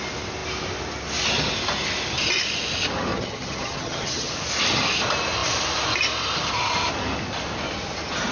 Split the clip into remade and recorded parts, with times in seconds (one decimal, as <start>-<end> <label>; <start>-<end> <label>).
0.0-3.1 recorded; 3.1-4.3 remade; 4.3-8.3 recorded